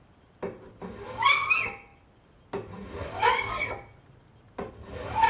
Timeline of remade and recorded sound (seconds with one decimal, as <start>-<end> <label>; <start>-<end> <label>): 0.0-5.3 recorded